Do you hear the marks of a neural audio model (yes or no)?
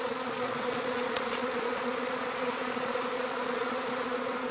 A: yes